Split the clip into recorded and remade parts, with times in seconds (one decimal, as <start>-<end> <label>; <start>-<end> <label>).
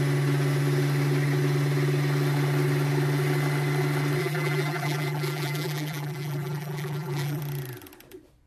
0.0-4.2 recorded; 4.2-7.4 remade; 7.4-8.5 recorded